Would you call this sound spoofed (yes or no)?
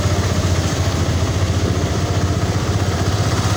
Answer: yes